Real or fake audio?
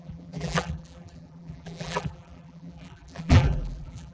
fake